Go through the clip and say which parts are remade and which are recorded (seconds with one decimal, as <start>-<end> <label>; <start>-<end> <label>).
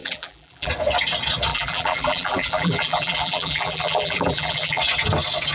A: 0.0-0.7 remade; 0.7-1.5 recorded; 1.5-4.8 remade; 4.8-5.5 recorded